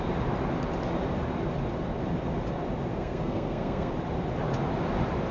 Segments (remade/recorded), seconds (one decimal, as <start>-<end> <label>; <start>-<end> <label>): 0.0-2.9 recorded; 2.9-3.9 remade; 3.9-5.3 recorded